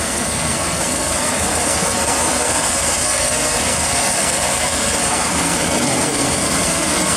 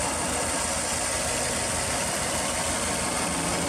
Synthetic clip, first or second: first